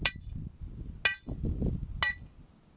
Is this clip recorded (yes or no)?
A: yes